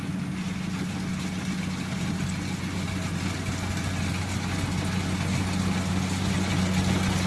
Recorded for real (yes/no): yes